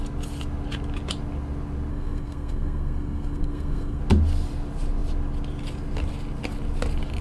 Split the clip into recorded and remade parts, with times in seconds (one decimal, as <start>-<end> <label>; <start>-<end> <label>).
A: 0.0-1.9 recorded; 1.9-4.0 remade; 4.0-7.2 recorded